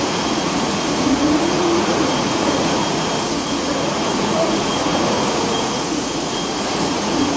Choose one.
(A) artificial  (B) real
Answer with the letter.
A